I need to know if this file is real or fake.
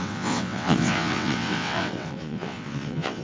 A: fake